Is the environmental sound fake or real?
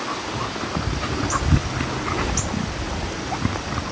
real